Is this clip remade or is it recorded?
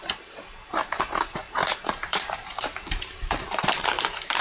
remade